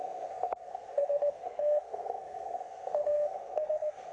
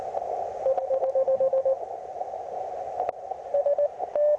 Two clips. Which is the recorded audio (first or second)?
second